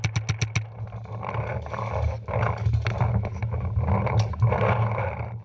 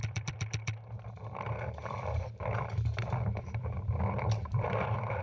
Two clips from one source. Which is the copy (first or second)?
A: second